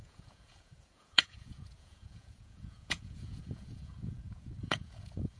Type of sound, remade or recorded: remade